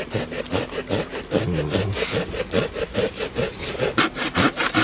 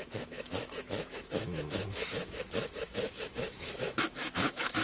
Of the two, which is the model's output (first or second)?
second